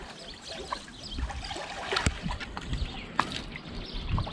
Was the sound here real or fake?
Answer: fake